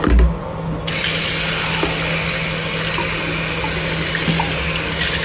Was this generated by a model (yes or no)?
no